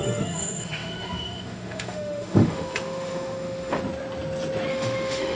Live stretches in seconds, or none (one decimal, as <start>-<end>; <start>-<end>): 3.8-4.7